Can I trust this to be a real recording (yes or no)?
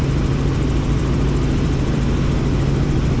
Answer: no